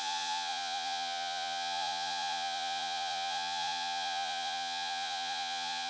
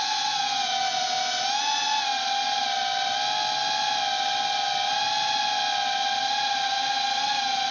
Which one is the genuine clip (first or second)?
second